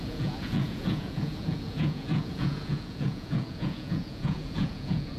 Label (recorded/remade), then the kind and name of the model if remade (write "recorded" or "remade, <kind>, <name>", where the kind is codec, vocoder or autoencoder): remade, vocoder, Vocos